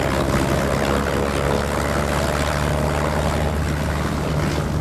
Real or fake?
real